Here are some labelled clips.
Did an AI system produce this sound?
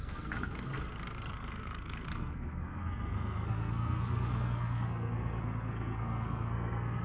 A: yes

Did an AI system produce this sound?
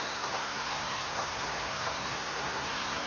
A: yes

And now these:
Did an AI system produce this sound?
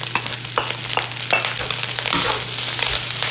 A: no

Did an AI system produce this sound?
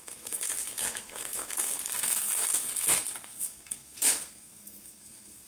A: yes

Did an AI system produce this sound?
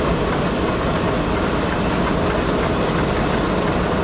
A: no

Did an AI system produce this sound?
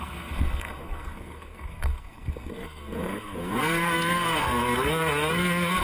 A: yes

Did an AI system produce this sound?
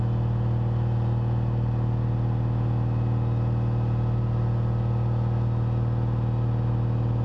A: no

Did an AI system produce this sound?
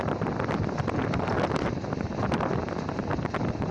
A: no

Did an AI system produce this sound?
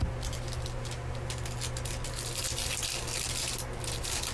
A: no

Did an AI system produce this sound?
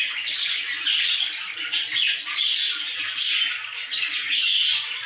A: no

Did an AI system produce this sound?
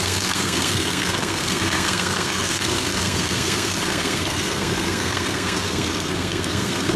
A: yes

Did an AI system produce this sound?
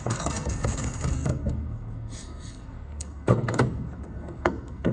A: yes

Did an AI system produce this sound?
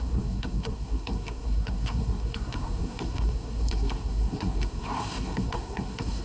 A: yes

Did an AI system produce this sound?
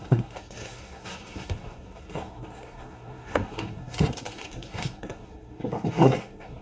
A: yes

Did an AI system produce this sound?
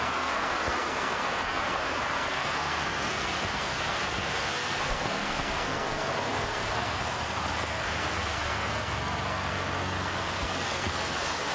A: yes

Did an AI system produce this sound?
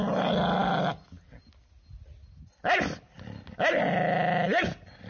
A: no